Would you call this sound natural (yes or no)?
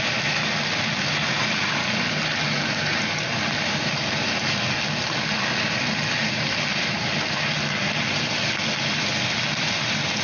yes